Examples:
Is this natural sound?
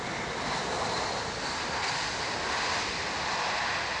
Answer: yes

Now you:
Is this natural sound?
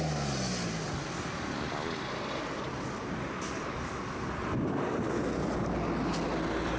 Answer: yes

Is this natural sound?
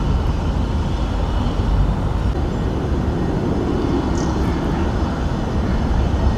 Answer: yes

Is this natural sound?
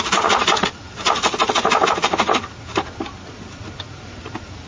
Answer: no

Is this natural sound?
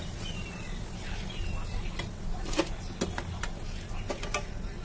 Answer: yes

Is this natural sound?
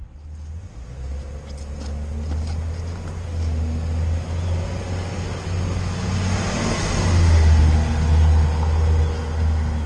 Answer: yes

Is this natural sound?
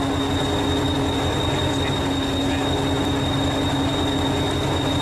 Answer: yes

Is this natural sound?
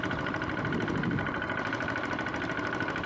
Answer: no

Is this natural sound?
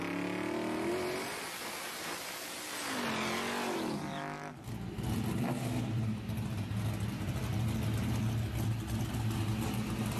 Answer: yes